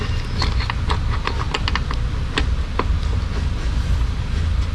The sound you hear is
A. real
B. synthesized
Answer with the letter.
A